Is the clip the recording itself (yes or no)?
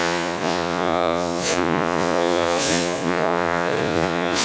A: no